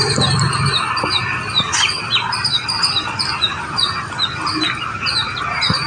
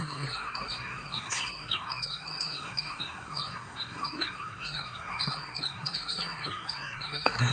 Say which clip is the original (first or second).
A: first